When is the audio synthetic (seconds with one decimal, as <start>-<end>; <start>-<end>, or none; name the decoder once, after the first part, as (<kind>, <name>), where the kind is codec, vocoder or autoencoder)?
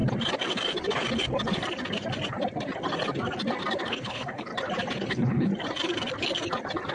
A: 3.9-4.5 (codec, HILCodec); 5.1-5.5